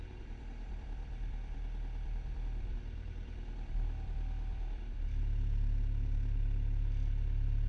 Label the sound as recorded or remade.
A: remade